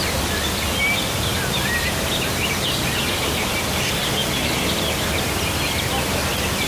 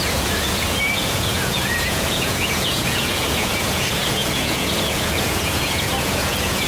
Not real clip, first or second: second